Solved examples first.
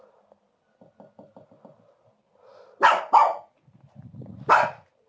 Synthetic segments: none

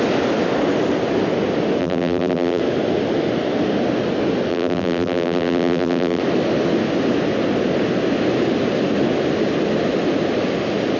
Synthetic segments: 1.8-2.6 (vocoder, BigVGAN v2); 4.5-6.2

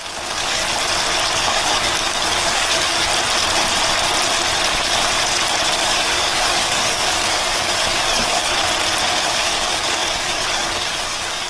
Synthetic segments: 0.0-0.6 (codec, DAC); 1.4-3.1; 5.8-8.5; 9.1-11.5

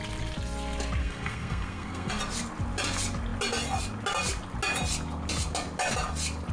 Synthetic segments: 1.0-2.1 (codec, SNAC)